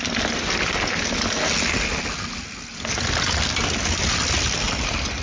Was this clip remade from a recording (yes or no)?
no